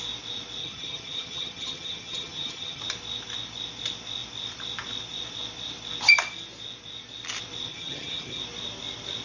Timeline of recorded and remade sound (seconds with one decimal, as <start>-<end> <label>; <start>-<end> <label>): 0.0-0.6 recorded; 0.6-2.8 remade; 2.8-7.7 recorded; 7.7-8.4 remade; 8.4-9.2 recorded